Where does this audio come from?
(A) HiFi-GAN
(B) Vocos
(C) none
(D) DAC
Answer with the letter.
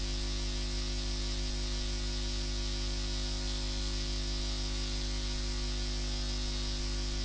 C